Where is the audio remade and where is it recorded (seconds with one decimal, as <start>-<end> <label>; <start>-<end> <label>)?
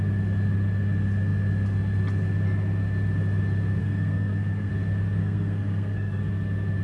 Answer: 0.0-3.8 recorded; 3.8-4.7 remade; 4.7-5.2 recorded; 5.2-6.2 remade; 6.2-6.8 recorded